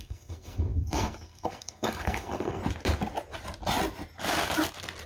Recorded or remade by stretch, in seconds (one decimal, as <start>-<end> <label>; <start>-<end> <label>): 0.0-2.6 remade; 2.6-5.1 recorded

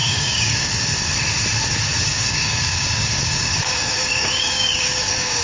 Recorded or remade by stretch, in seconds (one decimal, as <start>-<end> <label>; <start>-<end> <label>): 0.0-0.7 remade; 0.7-2.0 recorded; 2.0-5.4 remade

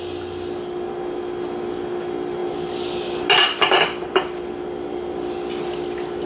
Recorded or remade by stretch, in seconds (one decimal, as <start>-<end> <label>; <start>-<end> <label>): 0.0-6.3 recorded

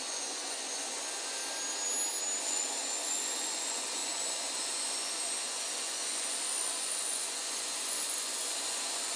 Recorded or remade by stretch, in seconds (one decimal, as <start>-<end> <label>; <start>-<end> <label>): 0.0-1.4 remade; 1.4-2.4 recorded; 2.4-9.2 remade

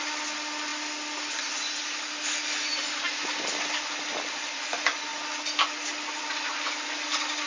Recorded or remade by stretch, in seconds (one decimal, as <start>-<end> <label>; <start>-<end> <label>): 0.0-7.5 recorded